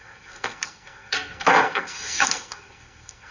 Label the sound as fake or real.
fake